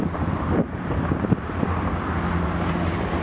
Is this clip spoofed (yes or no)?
no